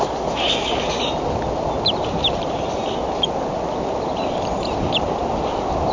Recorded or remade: recorded